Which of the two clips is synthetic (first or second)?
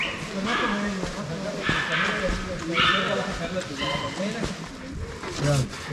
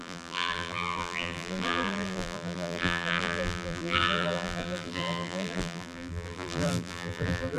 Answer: second